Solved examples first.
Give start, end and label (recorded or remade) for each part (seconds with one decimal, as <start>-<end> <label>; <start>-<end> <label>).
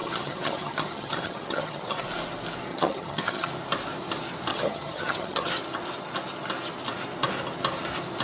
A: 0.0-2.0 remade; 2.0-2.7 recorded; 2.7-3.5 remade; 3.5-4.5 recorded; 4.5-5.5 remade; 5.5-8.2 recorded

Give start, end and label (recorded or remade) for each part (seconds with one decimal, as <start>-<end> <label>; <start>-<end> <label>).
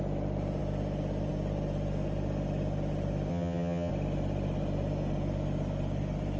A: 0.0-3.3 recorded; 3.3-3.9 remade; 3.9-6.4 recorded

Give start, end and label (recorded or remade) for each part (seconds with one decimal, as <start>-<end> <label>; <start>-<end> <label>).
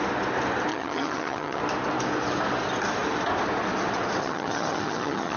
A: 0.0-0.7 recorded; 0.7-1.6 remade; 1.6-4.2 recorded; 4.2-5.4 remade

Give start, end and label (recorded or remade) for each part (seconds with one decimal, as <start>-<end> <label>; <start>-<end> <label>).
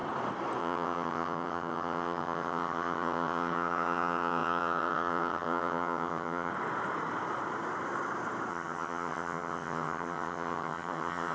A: 0.0-0.6 recorded; 0.6-6.5 remade; 6.5-8.5 recorded; 8.5-11.3 remade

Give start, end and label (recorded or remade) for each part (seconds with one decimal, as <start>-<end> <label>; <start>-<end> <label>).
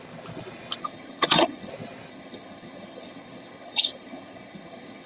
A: 0.0-0.8 recorded; 0.8-1.7 remade; 1.7-2.1 recorded; 2.1-5.1 remade